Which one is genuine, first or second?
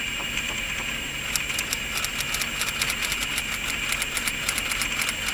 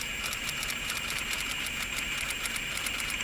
first